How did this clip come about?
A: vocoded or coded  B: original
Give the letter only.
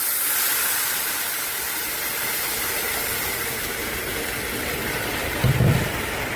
B